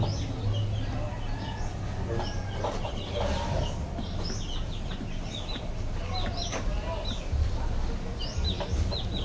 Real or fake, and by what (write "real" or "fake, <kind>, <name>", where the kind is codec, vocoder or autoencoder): real